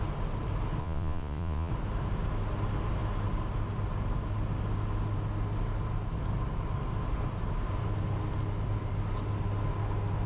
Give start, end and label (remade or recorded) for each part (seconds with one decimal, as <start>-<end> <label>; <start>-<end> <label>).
0.0-0.8 recorded; 0.8-1.7 remade; 1.7-10.3 recorded